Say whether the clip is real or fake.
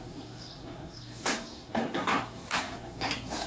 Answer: fake